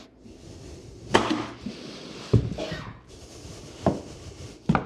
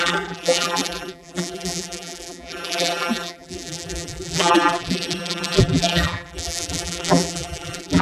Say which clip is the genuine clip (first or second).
first